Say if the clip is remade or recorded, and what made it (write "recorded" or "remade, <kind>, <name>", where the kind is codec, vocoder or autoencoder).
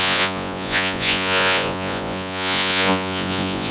remade, vocoder, Vocos